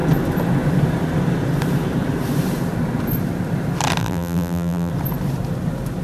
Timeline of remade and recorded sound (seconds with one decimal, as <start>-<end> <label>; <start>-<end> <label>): 0.0-4.0 recorded; 4.0-4.9 remade; 4.9-6.0 recorded